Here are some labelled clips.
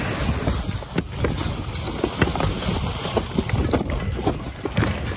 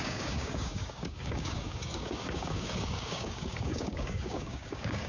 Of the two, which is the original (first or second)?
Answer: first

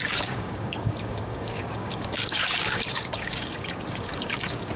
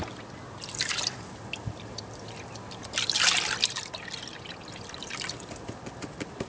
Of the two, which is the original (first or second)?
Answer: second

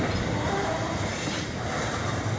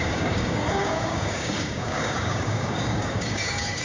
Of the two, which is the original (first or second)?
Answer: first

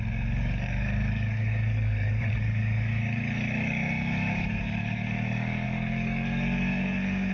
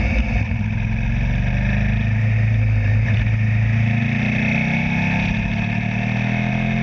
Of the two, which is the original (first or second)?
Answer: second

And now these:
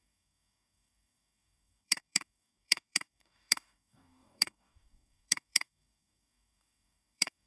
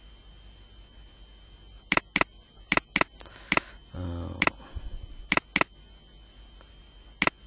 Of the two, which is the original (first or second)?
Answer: second